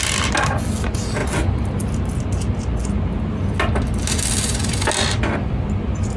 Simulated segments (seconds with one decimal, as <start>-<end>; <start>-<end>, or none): none